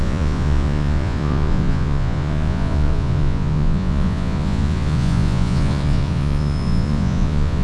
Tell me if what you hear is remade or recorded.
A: remade